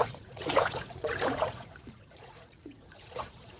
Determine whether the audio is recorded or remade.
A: remade